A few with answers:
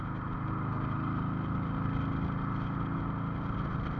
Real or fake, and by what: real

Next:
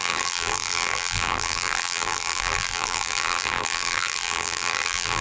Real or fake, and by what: fake, vocoder, BigVGAN v2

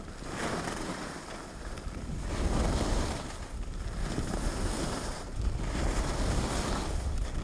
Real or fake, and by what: real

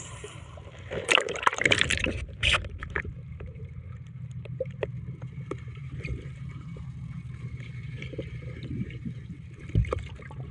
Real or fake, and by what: fake, vocoder, BigVGAN v2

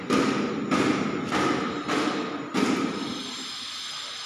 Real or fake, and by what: real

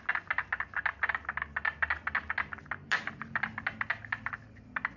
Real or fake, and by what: real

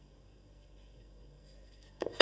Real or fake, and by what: fake, codec, SNAC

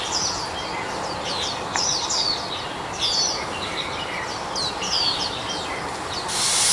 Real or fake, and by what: real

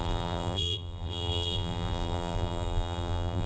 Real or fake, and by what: fake, vocoder, BigVGAN v2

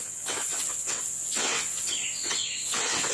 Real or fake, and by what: fake, vocoder, WaveNeXt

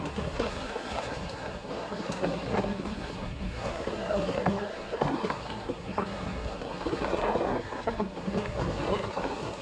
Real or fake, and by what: fake, codec, SNAC